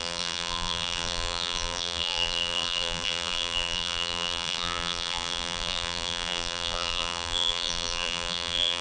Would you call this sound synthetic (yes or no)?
yes